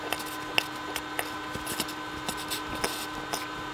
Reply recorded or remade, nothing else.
recorded